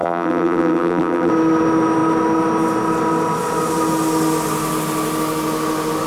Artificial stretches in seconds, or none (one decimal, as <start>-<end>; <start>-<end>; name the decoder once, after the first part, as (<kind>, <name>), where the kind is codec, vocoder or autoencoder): 0.0-1.3 (vocoder, BigVGAN v2)